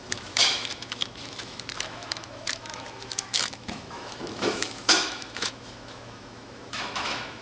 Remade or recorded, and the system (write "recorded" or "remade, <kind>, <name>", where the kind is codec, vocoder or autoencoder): remade, autoencoder, DAC-VAE